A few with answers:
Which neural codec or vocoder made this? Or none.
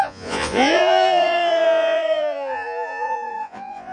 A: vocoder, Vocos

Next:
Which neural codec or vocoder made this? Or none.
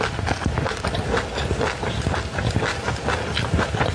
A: none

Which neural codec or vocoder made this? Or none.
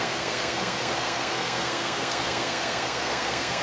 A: codec, SNAC